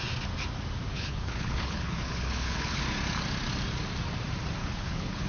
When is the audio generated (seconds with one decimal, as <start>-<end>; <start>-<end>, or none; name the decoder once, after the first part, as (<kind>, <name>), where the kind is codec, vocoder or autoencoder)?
0.9-2.8 (codec, HILCodec); 4.6-5.3